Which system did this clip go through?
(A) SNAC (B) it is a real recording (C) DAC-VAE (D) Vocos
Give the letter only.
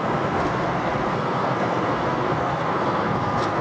A